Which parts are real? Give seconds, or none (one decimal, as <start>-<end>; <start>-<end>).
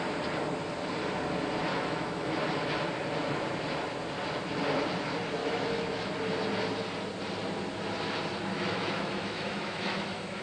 0.0-1.7; 2.4-5.4; 6.1-8.5